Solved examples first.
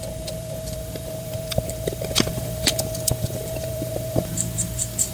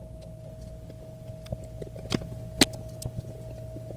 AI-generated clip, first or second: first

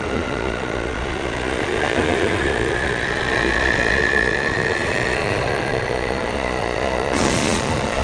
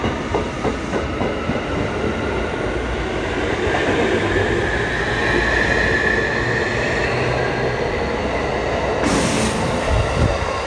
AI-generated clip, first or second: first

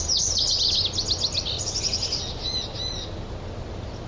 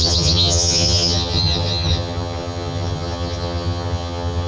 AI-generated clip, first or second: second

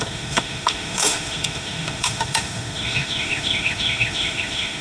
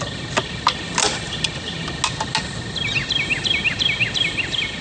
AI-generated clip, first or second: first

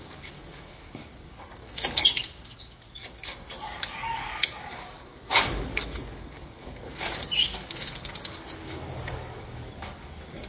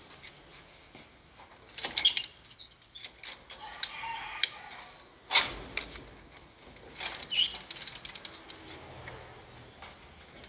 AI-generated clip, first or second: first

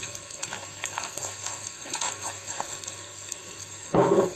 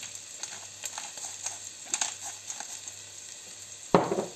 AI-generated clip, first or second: first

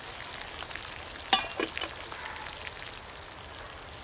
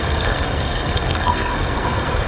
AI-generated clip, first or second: second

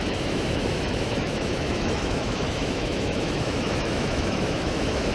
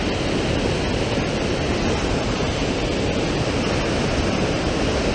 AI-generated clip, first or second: first